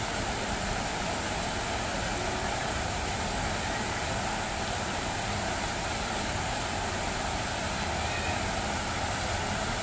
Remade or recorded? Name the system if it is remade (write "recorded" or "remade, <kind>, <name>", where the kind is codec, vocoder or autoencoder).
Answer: recorded